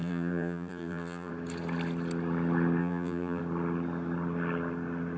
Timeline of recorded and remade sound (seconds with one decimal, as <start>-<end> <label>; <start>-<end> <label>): 0.0-1.3 remade; 1.3-2.8 recorded; 2.8-3.4 remade; 3.4-5.2 recorded